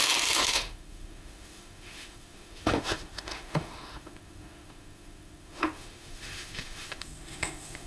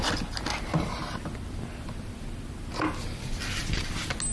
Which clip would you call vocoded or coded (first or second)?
first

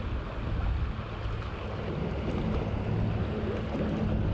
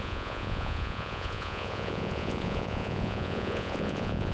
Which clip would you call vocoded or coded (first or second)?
second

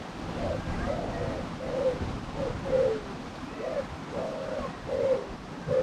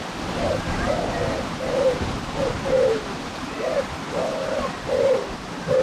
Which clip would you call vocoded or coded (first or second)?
second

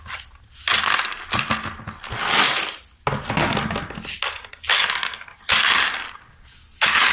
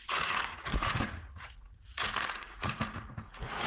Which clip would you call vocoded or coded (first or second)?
second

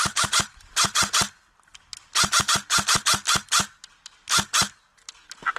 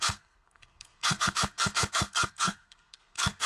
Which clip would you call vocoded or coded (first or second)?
second